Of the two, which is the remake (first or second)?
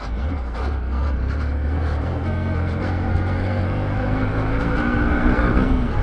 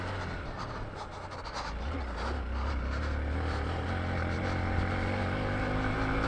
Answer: first